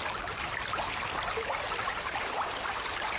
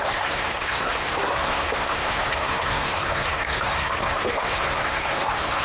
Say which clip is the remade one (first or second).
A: second